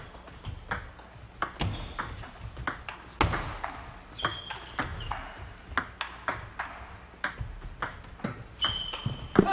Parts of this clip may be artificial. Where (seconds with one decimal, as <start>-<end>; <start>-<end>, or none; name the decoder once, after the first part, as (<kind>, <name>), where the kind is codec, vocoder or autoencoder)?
none